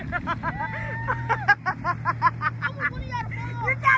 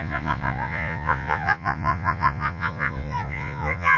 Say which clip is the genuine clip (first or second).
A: first